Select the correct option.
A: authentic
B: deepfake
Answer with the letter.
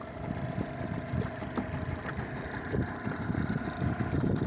A